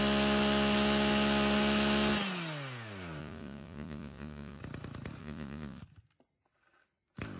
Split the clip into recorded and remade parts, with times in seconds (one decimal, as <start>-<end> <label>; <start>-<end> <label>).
0.0-3.2 recorded; 3.2-4.6 remade; 4.6-5.2 recorded; 5.2-5.8 remade; 5.8-7.4 recorded